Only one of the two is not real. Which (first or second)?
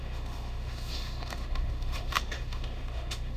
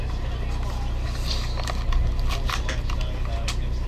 first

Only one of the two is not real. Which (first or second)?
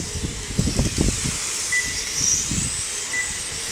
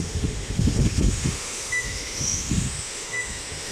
second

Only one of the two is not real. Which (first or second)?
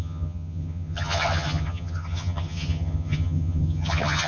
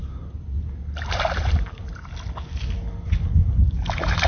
first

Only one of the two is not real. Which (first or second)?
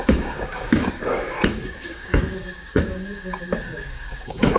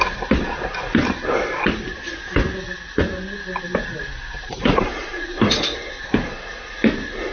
first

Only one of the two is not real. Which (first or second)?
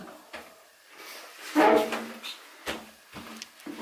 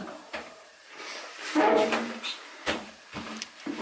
second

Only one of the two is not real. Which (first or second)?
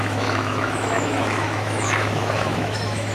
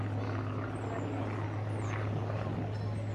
first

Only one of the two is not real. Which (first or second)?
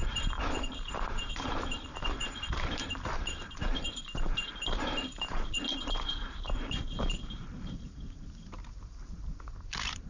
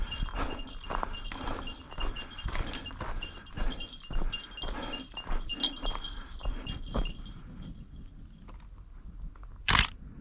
first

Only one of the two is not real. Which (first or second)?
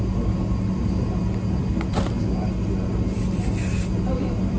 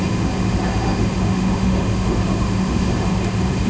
second